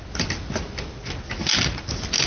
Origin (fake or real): real